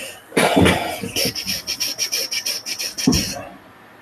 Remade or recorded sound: recorded